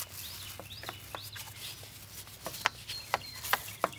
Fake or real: real